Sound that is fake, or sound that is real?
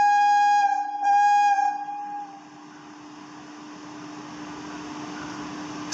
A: real